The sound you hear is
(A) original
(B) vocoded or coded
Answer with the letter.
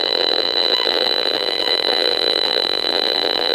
B